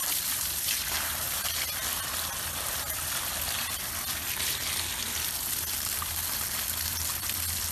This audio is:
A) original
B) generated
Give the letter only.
A